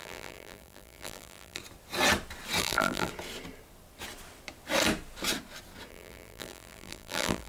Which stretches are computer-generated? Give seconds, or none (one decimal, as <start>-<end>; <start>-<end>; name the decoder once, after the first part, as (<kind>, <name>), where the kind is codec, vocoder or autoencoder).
0.0-1.6 (vocoder, BigVGAN v2); 2.6-3.1; 5.9-7.5

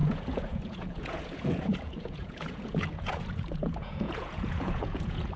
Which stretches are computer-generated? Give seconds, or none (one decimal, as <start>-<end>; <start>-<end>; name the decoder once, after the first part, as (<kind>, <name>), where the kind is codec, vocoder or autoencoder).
0.0-5.4 (vocoder, Vocos)

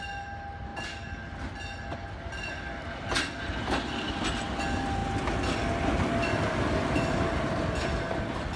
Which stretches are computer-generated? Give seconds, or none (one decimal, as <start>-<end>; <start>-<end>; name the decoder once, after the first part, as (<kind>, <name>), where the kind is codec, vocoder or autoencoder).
none